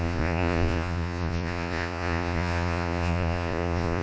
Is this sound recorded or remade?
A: remade